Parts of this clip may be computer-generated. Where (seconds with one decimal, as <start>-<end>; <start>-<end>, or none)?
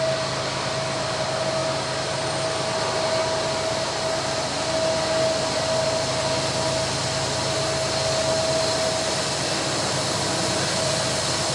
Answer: none